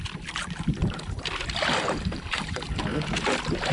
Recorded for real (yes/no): yes